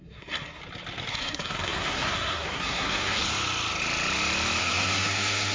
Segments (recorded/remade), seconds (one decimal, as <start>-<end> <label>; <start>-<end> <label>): 0.0-0.6 remade; 0.6-1.1 recorded; 1.1-3.2 remade; 3.2-4.6 recorded; 4.6-5.5 remade